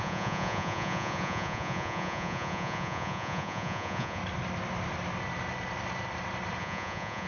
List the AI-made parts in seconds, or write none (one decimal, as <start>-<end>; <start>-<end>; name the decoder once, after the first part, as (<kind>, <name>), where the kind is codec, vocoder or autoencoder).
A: 0.0-4.2 (vocoder, Vocos); 6.6-7.3